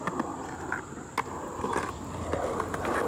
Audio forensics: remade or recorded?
recorded